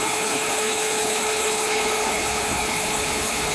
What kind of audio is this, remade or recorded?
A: remade